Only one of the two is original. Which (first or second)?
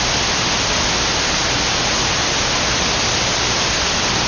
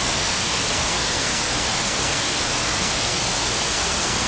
first